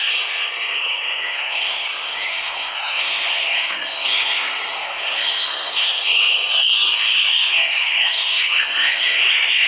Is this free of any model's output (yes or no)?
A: no